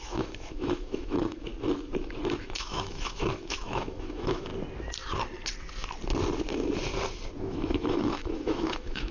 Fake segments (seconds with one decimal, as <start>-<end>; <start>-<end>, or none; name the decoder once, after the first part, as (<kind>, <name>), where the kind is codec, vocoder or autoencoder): 0.0-1.5 (autoencoder, DAC-VAE); 2.4-4.5; 7.4-9.1